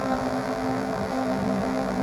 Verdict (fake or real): fake